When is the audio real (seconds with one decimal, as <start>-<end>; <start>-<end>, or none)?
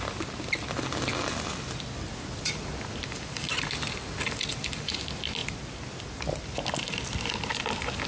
0.0-8.1